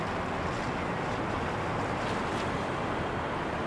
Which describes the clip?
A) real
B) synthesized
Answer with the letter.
A